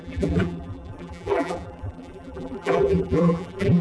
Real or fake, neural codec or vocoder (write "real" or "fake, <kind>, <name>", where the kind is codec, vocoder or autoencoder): fake, vocoder, BigVGAN v2